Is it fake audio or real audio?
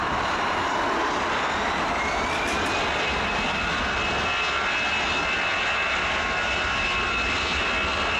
real